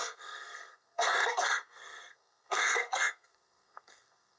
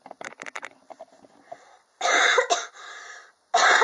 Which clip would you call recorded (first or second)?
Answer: second